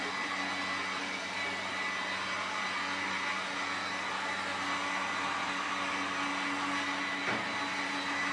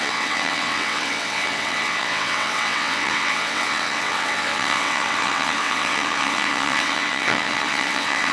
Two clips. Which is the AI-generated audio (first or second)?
second